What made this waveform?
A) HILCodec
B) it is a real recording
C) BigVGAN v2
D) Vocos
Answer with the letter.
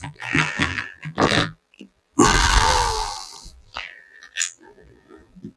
C